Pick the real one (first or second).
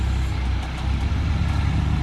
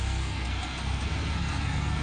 first